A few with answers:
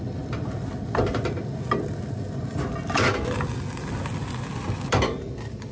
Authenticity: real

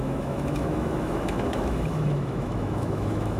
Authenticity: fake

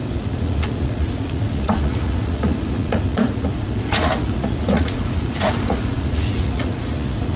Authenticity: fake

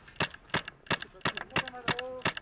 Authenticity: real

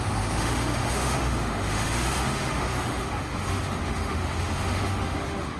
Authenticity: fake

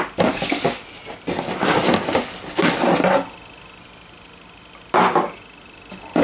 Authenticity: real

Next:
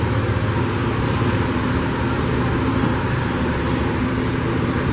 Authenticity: fake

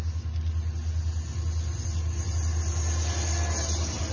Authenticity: real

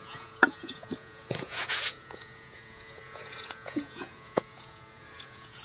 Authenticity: fake